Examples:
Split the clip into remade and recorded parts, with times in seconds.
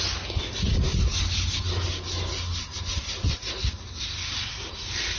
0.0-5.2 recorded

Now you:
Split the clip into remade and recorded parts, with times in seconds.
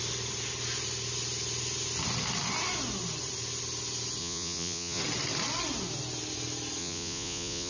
0.0-4.2 recorded; 4.2-5.0 remade; 5.0-6.8 recorded; 6.8-7.7 remade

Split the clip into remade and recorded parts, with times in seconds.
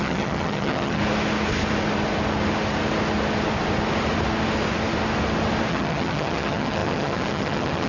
0.0-1.0 remade; 1.0-5.7 recorded; 5.7-7.9 remade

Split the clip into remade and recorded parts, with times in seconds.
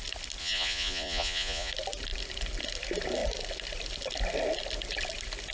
0.0-0.4 recorded; 0.4-1.7 remade; 1.7-5.5 recorded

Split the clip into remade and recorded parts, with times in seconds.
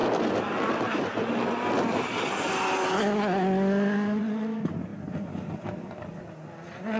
0.0-7.0 recorded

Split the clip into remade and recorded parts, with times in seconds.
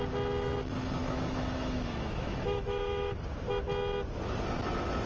0.0-1.0 recorded; 1.0-3.2 remade; 3.2-5.1 recorded